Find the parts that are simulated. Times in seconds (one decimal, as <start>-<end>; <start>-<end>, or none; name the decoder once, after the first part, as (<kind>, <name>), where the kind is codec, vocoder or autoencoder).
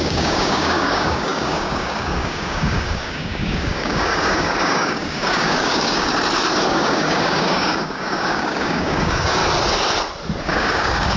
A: 0.0-6.1 (codec, DAC); 6.7-9.4; 10.4-11.2